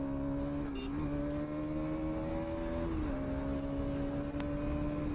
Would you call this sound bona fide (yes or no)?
yes